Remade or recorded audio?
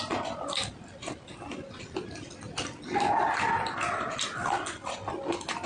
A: recorded